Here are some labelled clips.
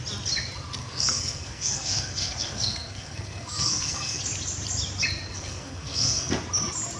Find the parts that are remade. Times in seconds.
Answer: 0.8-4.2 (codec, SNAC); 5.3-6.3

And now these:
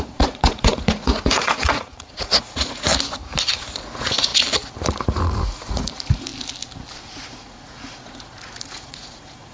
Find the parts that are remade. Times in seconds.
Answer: 0.0-2.9 (vocoder, Vocos); 3.8-4.3; 5.0-6.3; 7.0-9.5

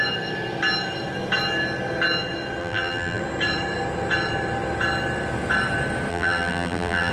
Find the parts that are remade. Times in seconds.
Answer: 2.6-3.2 (vocoder, BigVGAN v2); 6.1-7.1

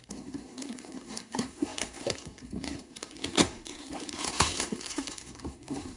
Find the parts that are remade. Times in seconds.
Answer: 0.0-6.0 (codec, SNAC)

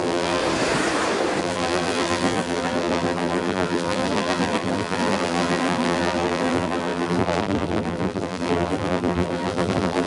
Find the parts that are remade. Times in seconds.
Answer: 0.0-0.4 (vocoder, BigVGAN v2); 1.4-10.1